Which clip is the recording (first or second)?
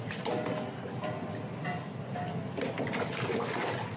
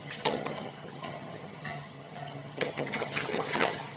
first